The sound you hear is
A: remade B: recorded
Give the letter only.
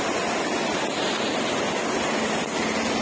B